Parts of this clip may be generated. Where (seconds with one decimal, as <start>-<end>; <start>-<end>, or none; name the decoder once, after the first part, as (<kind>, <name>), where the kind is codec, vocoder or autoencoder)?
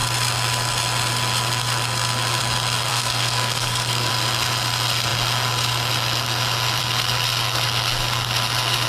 2.9-4.1 (codec, SNAC)